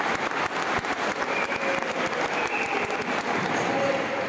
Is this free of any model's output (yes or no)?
yes